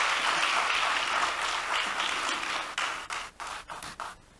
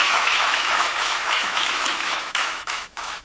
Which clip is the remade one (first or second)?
second